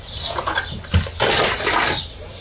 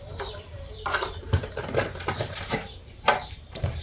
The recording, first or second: first